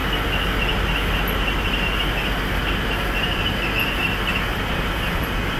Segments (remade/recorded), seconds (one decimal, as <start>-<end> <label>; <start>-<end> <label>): 0.0-4.5 recorded; 4.5-5.6 remade